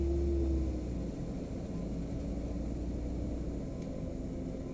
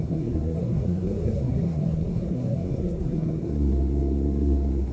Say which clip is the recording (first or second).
first